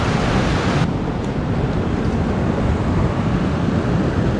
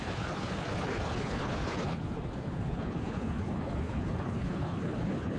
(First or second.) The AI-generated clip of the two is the second